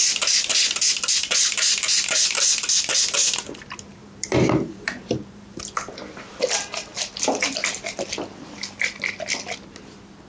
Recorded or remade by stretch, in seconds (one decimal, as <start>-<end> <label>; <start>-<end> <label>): 0.0-3.9 recorded; 3.9-5.6 remade; 5.6-10.3 recorded